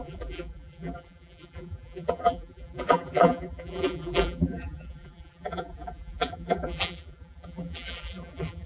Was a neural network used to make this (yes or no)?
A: yes